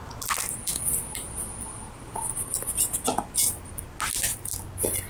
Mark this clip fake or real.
real